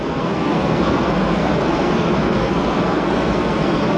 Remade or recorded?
remade